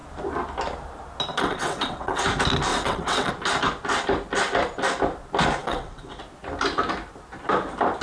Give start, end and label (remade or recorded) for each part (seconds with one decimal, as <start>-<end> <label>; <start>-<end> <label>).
0.0-1.3 recorded; 1.3-2.2 remade; 2.2-2.7 recorded; 2.7-3.3 remade; 3.3-5.6 recorded; 5.6-6.2 remade; 6.2-8.0 recorded